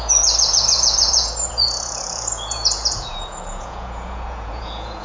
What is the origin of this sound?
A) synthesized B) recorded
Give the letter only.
A